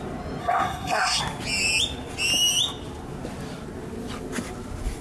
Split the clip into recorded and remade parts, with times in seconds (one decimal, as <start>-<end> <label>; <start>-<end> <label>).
0.0-0.4 recorded; 0.4-1.2 remade; 1.2-5.0 recorded

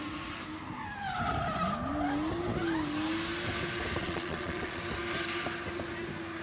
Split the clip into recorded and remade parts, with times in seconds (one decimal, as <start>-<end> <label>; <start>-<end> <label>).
0.0-4.0 recorded; 4.0-4.8 remade; 4.8-6.4 recorded

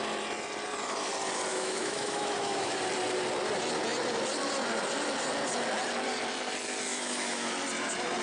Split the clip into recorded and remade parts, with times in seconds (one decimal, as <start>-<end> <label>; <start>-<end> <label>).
0.0-1.5 recorded; 1.5-2.8 remade; 2.8-6.9 recorded; 6.9-7.5 remade; 7.5-8.2 recorded

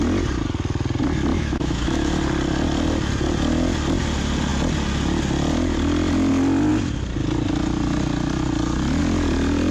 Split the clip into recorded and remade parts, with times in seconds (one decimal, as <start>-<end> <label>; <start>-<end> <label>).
0.0-1.3 recorded; 1.3-2.1 remade; 2.1-9.7 recorded